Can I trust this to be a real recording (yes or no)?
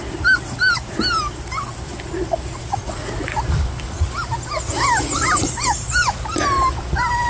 yes